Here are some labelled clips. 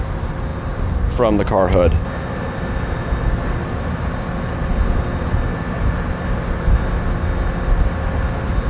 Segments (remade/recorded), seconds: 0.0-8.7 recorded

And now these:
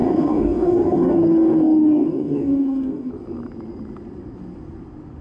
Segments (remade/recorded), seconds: 0.0-3.1 remade; 3.1-5.2 recorded

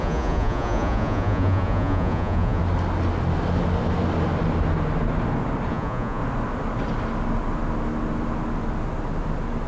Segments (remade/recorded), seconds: 0.0-2.6 remade; 2.6-5.7 recorded; 5.7-6.2 remade; 6.2-9.7 recorded

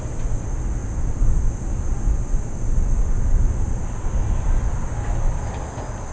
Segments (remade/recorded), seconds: 0.0-6.1 recorded

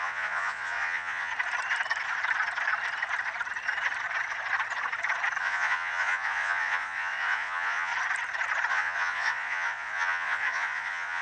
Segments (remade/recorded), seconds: 0.0-1.3 remade; 1.3-5.4 recorded; 5.4-7.9 remade; 7.9-8.7 recorded; 8.7-11.2 remade

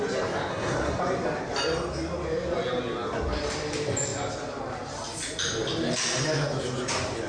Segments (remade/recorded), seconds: 0.0-0.5 recorded; 0.5-1.0 remade; 1.0-7.3 recorded